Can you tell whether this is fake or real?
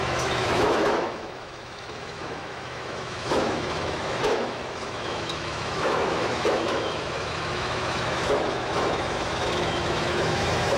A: fake